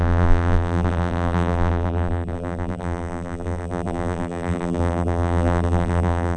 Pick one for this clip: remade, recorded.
remade